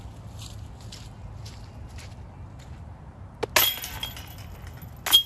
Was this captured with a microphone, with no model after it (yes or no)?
yes